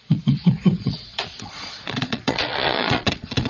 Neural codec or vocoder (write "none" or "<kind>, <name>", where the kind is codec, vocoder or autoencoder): vocoder, Vocos